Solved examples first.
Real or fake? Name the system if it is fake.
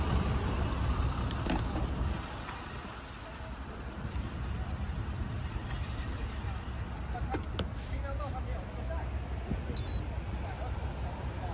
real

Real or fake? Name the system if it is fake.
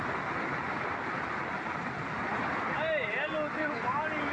real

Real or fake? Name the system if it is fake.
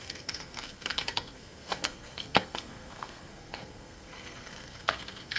fake, codec, SNAC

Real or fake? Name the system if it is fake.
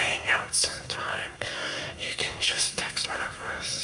fake, codec, SNAC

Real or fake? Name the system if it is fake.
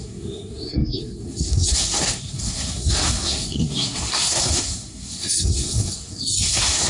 fake, codec, SNAC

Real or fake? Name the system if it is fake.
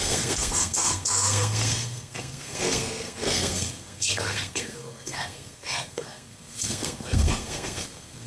fake, codec, SNAC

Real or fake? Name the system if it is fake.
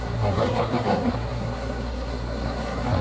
fake, codec, SNAC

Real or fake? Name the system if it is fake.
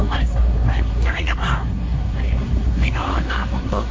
fake, codec, SNAC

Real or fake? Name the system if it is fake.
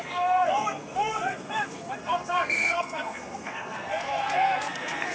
fake, codec, SNAC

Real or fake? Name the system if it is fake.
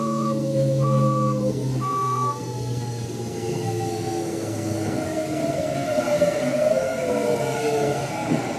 fake, codec, SNAC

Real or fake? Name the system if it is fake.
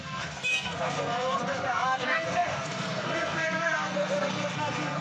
fake, codec, SNAC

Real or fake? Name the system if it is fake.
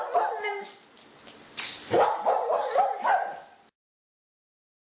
real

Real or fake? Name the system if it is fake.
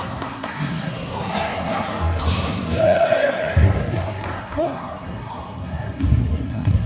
fake, codec, SNAC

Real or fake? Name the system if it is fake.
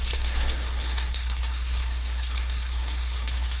fake, codec, SNAC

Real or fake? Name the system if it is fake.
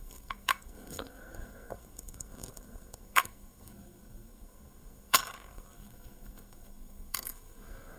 fake, codec, SNAC